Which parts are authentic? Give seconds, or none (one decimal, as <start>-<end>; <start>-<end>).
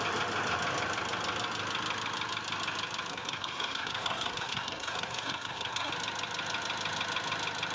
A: 0.0-3.1; 5.9-7.7